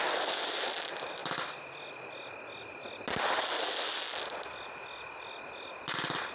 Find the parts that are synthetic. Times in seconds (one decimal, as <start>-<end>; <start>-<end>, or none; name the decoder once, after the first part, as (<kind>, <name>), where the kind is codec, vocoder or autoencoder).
none